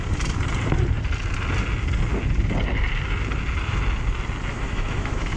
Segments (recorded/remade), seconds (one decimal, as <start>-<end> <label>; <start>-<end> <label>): 0.0-4.5 recorded; 4.5-5.4 remade